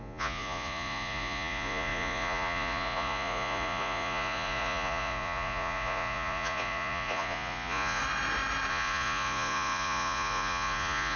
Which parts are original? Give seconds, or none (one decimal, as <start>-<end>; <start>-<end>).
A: 8.0-8.7